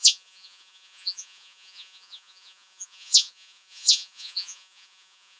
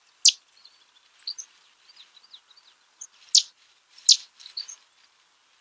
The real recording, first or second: second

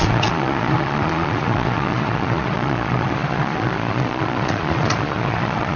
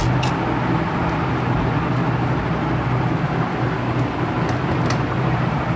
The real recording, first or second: second